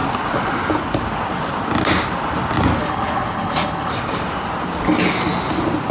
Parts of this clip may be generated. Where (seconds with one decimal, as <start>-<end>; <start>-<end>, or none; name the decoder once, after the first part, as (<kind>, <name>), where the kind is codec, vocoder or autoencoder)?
2.8-3.9 (codec, HILCodec)